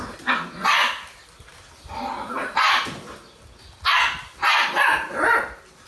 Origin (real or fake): real